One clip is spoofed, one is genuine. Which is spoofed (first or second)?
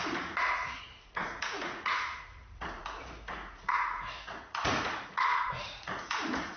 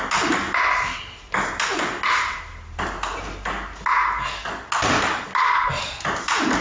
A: first